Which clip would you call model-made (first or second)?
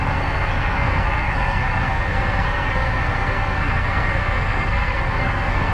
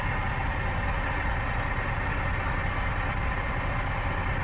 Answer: first